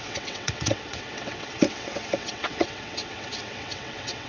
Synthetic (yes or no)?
yes